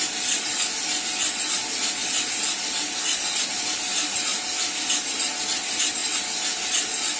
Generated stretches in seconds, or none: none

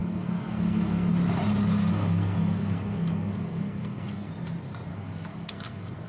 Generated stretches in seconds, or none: 0.0-1.1 (codec, SNAC); 1.9-4.3; 4.9-6.1